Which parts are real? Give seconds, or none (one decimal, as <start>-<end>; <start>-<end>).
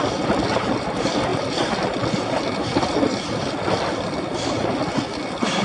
0.0-5.6